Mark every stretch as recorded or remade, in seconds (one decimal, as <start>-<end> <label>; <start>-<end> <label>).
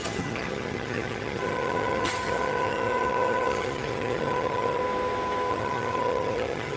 0.0-4.8 remade; 4.8-5.5 recorded; 5.5-6.8 remade